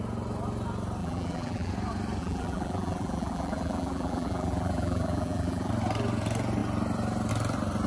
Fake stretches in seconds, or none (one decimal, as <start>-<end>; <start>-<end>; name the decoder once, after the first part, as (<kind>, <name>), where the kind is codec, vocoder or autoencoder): 1.0-1.7 (vocoder, BigVGAN v2); 2.2-5.7